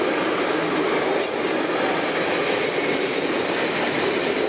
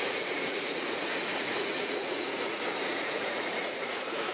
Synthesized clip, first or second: second